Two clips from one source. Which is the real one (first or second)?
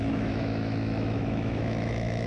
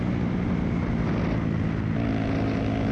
second